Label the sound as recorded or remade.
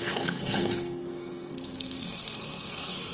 remade